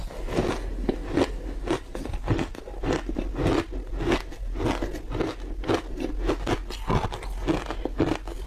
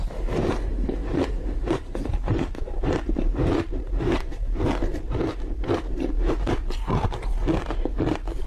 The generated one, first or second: second